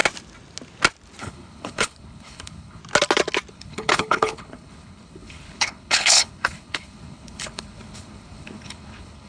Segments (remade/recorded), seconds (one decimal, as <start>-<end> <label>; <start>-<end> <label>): 0.0-1.2 recorded; 1.2-2.8 remade; 2.8-3.5 recorded; 3.5-9.3 remade

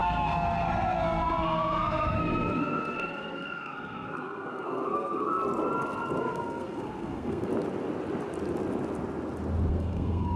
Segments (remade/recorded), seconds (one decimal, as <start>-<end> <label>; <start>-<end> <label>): 0.0-5.4 remade; 5.4-6.2 recorded; 6.2-7.5 remade; 7.5-9.7 recorded; 9.7-10.4 remade

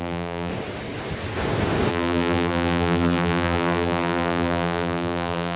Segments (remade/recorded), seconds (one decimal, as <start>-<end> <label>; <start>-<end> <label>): 0.0-0.5 remade; 0.5-1.9 recorded; 1.9-5.6 remade

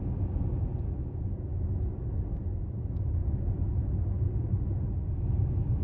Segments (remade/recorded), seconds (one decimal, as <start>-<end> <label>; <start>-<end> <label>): 0.0-5.8 recorded

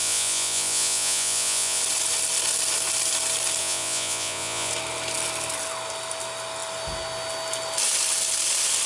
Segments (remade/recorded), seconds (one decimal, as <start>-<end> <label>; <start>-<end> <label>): 0.0-1.8 remade; 1.8-3.6 recorded; 3.6-4.7 remade; 4.7-8.9 recorded